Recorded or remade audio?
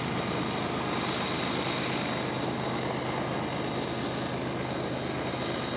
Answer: recorded